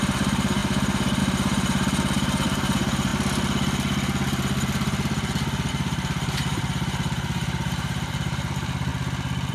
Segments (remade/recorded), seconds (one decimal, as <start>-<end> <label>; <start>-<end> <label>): 0.0-3.1 remade; 3.1-5.7 recorded; 5.7-8.9 remade; 8.9-9.5 recorded